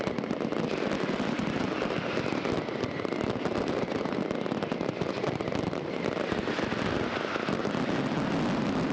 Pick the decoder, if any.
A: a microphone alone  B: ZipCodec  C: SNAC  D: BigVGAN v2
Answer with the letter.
A